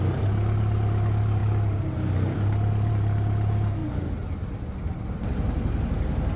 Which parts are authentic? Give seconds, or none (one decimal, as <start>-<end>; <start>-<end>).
0.0-6.4